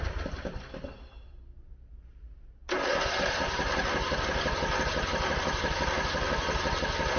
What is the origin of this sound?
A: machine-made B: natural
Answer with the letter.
B